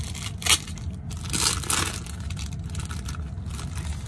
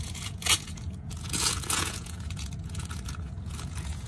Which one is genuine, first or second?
first